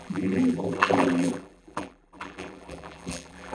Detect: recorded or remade remade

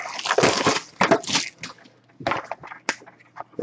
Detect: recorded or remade recorded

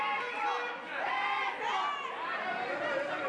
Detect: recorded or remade recorded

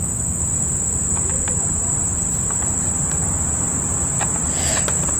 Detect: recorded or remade remade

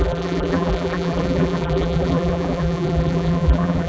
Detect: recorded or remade remade